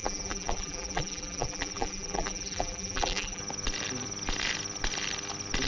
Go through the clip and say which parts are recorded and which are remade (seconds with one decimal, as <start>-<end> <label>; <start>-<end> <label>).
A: 0.0-3.4 remade; 3.4-5.7 recorded